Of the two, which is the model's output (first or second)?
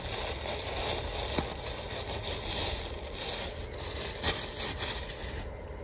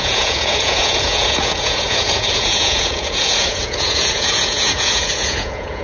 second